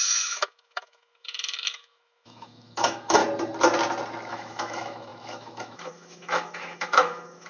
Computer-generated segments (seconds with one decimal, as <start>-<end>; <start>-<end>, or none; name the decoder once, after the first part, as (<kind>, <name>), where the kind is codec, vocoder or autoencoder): 0.0-3.2 (autoencoder, DAC-VAE); 4.3-7.5